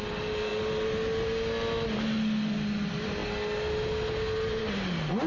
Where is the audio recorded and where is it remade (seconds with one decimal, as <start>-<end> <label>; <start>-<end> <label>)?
0.0-5.3 recorded